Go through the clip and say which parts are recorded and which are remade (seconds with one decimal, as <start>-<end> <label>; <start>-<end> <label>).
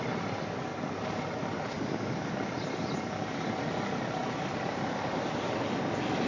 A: 0.0-0.7 recorded; 0.7-1.6 remade; 1.6-6.3 recorded